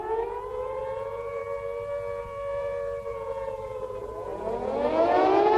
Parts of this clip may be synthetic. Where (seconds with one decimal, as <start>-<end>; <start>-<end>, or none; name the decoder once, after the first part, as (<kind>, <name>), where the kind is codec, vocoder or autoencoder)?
0.0-1.4 (vocoder, Vocos); 2.2-5.6